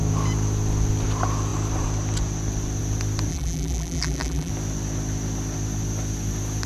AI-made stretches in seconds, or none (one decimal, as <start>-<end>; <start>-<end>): 3.3-4.5